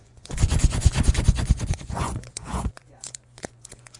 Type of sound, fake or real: fake